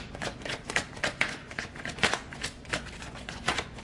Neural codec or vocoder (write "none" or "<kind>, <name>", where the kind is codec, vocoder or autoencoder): vocoder, Vocos